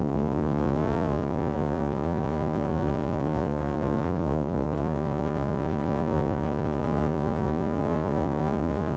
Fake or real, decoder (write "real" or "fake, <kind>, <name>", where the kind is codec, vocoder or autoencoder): fake, vocoder, Vocos